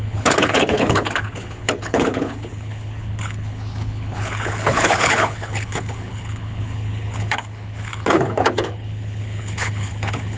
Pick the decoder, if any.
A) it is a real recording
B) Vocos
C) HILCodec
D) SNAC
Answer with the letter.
C